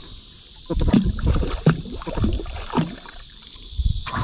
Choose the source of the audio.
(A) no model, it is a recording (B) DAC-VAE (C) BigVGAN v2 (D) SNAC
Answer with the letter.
C